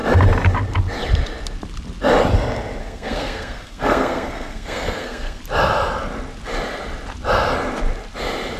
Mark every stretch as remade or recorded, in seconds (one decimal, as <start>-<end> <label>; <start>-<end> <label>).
0.0-2.8 recorded; 2.8-5.4 remade; 5.4-8.6 recorded